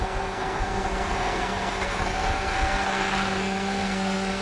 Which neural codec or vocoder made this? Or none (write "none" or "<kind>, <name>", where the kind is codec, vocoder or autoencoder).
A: codec, SNAC